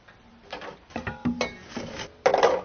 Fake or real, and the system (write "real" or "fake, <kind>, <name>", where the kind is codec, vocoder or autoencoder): real